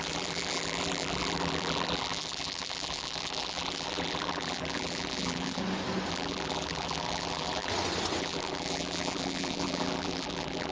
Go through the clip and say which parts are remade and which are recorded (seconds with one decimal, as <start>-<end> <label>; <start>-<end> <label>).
0.0-5.6 remade; 5.6-6.1 recorded; 6.1-7.7 remade; 7.7-8.2 recorded; 8.2-10.7 remade